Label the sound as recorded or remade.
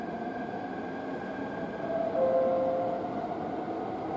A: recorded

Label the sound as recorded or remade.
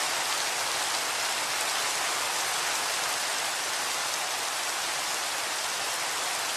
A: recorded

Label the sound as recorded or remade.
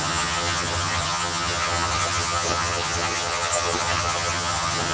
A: remade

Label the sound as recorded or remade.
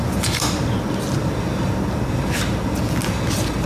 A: recorded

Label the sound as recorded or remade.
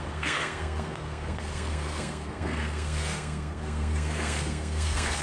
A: remade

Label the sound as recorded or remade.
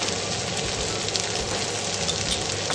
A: recorded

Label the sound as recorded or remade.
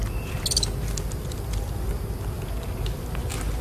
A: recorded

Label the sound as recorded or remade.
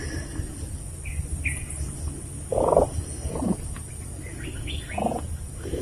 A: recorded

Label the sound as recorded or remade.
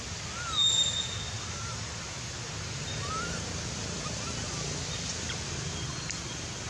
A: recorded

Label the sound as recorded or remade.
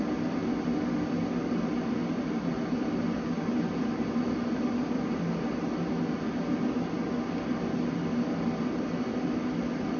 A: recorded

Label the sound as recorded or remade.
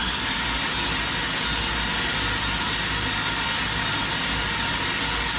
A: recorded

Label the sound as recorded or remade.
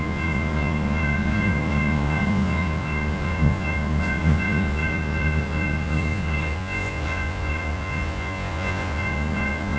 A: remade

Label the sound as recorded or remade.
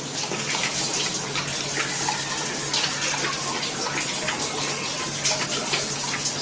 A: recorded